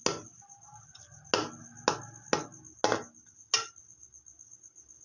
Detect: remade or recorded recorded